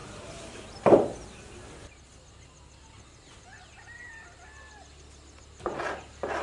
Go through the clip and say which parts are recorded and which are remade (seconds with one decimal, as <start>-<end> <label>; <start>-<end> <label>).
0.0-6.4 recorded

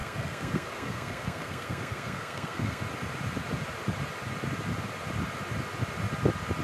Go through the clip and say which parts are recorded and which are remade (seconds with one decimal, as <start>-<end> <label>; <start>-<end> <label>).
0.0-2.8 remade; 2.8-6.6 recorded